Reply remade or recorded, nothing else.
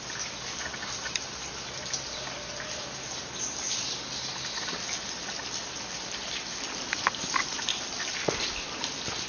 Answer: recorded